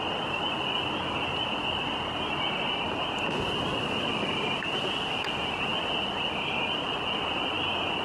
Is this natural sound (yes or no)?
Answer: yes